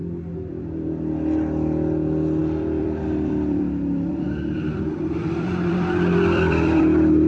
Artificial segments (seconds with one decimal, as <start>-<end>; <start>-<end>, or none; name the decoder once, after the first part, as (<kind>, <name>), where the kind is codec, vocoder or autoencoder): 2.4-6.8 (vocoder, BigVGAN v2)